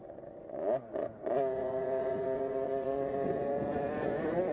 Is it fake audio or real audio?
fake